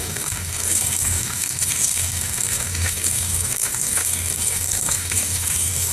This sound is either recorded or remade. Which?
remade